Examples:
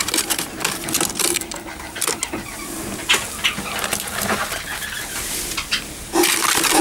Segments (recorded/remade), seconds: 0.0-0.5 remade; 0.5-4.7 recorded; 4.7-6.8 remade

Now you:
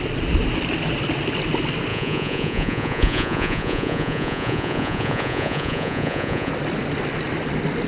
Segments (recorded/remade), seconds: 0.0-1.9 recorded; 1.9-6.5 remade; 6.5-7.9 recorded

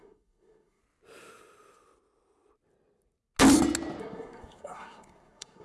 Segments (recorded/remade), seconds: 0.0-0.8 remade; 0.8-4.0 recorded; 4.0-5.6 remade